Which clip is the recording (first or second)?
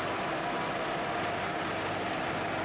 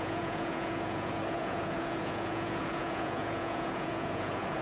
first